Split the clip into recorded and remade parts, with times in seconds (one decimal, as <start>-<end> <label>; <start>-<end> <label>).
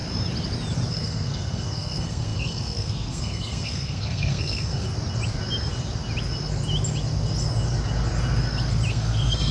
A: 0.0-0.9 recorded; 0.9-4.9 remade; 4.9-8.9 recorded; 8.9-9.5 remade